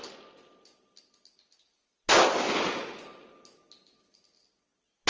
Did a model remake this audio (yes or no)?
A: no